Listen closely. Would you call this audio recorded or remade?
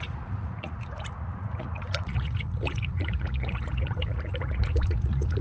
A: remade